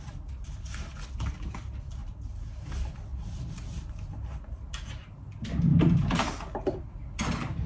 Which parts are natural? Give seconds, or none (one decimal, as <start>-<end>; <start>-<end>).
0.0-2.0; 2.5-5.7; 6.2-7.7